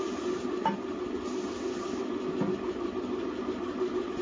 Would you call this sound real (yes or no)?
yes